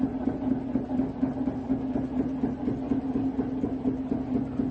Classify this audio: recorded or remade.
recorded